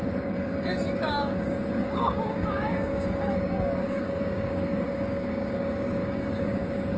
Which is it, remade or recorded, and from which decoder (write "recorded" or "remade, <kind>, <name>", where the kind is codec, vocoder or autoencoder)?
remade, codec, DAC